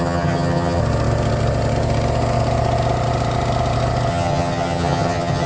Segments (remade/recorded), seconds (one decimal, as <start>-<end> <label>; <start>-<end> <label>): 0.0-0.8 remade; 0.8-4.1 recorded; 4.1-5.5 remade